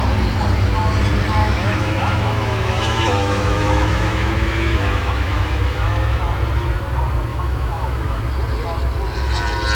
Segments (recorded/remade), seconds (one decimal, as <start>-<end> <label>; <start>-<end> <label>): 0.0-1.4 recorded; 1.4-6.2 remade; 6.2-7.3 recorded; 7.3-8.2 remade; 8.2-9.7 recorded